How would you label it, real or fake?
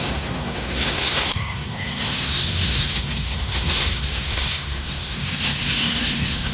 fake